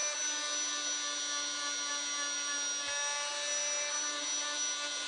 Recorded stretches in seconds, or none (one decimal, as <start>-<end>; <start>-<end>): 0.0-5.1